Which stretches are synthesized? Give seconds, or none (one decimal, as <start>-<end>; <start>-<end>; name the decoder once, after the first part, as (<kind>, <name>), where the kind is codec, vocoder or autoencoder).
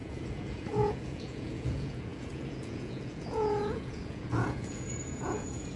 0.0-5.8 (vocoder, Vocos)